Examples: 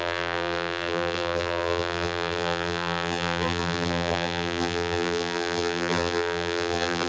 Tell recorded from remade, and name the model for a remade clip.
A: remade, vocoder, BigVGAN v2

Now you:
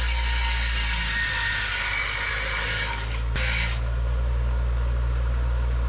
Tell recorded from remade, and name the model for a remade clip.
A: recorded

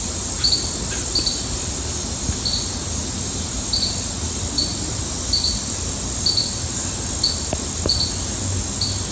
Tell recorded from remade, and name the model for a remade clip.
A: recorded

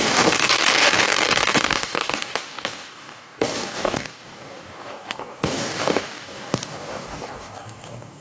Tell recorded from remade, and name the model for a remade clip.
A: remade, codec, DAC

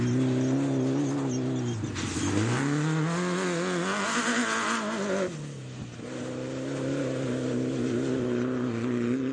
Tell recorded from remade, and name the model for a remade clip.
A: recorded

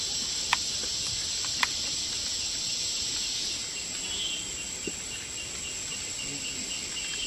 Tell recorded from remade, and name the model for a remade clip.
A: recorded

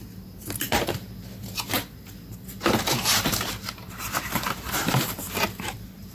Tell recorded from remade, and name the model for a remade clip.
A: remade, vocoder, BigVGAN v2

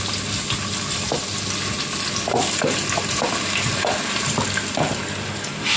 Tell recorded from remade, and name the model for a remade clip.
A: recorded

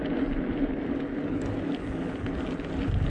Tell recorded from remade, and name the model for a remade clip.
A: recorded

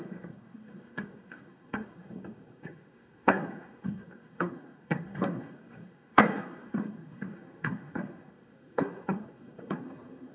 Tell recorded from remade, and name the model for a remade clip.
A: remade, codec, SNAC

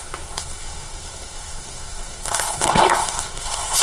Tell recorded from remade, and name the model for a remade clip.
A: remade, codec, SNAC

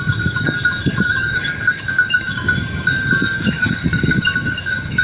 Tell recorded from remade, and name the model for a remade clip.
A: remade, codec, DAC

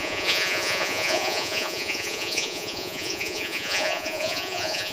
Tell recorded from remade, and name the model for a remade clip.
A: remade, vocoder, Vocos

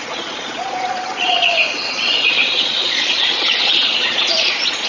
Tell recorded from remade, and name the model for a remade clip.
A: remade, vocoder, Vocos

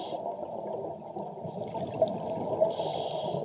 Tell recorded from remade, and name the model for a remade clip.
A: recorded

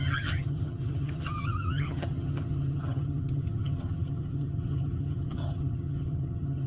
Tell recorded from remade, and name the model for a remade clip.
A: remade, vocoder, HiFi-GAN